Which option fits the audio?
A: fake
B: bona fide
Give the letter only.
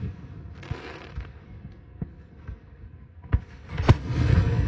A